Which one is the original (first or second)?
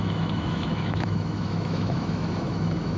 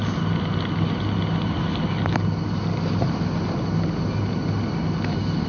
second